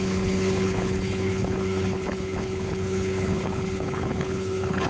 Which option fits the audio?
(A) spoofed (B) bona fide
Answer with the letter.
A